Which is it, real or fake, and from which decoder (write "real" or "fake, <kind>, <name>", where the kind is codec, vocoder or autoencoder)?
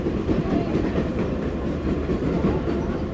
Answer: fake, vocoder, BigVGAN v2